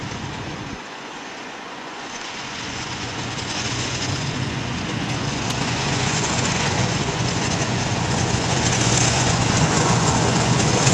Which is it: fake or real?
fake